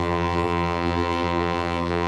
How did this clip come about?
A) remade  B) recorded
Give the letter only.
A